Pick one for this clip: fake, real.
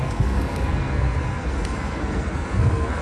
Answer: fake